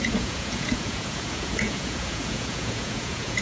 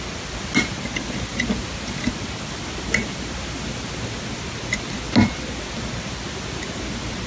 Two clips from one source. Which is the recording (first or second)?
second